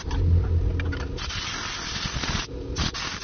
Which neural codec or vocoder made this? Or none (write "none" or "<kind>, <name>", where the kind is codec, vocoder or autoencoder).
none